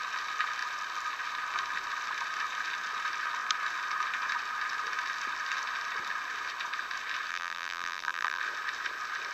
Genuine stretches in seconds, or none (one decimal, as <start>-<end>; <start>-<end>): 0.0-7.3; 8.4-9.3